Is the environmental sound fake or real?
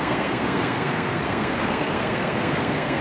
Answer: fake